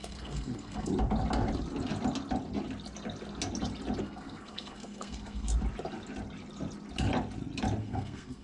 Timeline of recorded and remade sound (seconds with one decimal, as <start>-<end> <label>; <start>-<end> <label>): 0.0-0.9 remade; 0.9-4.0 recorded; 4.0-5.5 remade; 5.5-7.8 recorded; 7.8-8.4 remade